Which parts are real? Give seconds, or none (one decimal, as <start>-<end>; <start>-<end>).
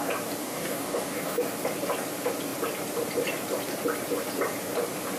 0.0-0.4; 1.4-5.2